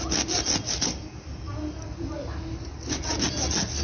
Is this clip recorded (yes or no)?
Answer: yes